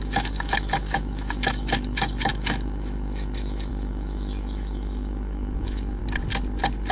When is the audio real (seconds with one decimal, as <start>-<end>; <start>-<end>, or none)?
6.0-6.9